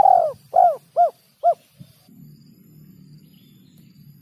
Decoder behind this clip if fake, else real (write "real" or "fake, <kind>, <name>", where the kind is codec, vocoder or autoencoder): real